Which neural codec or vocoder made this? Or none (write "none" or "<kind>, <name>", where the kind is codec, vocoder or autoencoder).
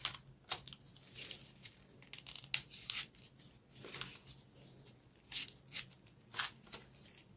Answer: none